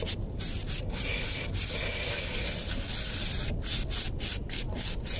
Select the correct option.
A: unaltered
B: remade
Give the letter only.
A